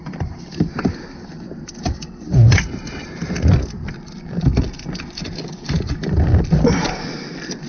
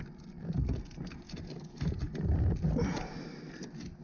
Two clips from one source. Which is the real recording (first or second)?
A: second